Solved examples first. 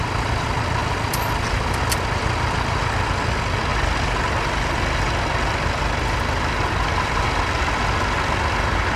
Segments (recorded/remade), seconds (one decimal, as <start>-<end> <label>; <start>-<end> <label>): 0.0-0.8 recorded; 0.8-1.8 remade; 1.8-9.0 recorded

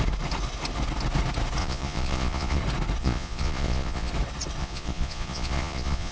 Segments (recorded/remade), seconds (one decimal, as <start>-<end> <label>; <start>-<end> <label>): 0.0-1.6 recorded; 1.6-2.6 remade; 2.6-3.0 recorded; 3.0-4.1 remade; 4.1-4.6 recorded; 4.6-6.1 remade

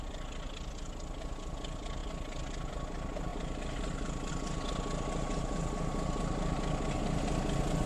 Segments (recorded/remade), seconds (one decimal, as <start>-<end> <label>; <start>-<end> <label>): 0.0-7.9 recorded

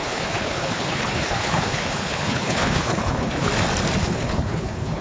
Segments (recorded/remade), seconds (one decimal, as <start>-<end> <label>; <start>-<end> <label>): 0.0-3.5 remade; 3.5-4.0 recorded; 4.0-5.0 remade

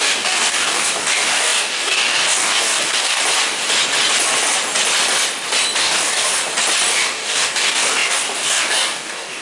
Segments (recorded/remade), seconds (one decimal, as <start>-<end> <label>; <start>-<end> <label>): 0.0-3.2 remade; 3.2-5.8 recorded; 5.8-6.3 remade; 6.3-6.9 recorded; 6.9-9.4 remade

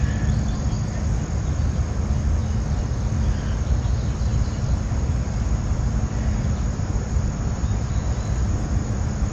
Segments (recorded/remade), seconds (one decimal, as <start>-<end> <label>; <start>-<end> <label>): 0.0-4.3 recorded; 4.3-9.3 remade